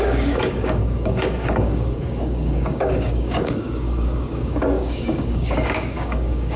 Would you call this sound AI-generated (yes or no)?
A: yes